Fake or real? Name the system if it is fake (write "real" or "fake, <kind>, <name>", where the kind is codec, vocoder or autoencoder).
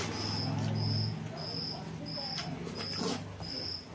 real